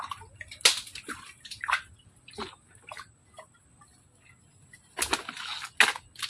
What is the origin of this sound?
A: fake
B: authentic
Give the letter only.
B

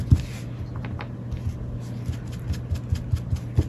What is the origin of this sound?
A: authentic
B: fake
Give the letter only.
A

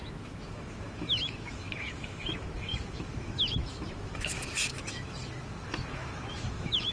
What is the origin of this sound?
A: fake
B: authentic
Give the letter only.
A